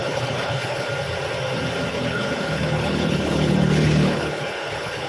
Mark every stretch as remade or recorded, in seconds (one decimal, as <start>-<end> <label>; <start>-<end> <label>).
0.0-0.9 remade; 0.9-1.9 recorded; 1.9-5.1 remade